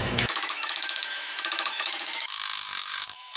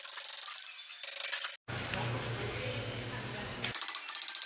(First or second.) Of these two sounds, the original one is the second